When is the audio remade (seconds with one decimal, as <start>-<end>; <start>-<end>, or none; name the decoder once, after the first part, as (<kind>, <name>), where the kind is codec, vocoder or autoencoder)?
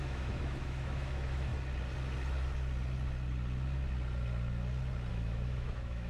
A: 0.0-1.5 (autoencoder, DAC-VAE); 5.1-6.1